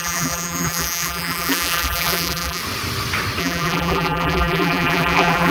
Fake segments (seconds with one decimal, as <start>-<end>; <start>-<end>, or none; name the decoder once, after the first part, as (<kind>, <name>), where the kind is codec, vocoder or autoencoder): 0.0-2.6 (vocoder, BigVGAN v2); 3.4-5.5